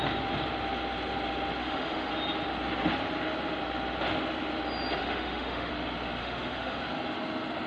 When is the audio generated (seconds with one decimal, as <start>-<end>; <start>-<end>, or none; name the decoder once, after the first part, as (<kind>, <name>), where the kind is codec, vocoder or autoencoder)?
1.6-2.1 (autoencoder, DAC-VAE); 5.0-5.7; 6.2-6.8